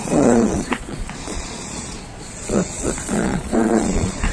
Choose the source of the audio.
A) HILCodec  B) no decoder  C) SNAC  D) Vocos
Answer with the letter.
D